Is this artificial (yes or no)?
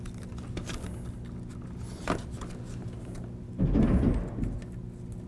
no